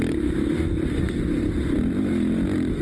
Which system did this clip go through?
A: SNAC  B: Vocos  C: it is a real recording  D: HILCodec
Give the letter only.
C